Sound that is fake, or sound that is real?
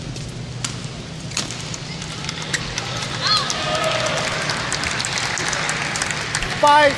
real